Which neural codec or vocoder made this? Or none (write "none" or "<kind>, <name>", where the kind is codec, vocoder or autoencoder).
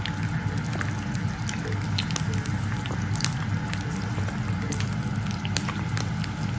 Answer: none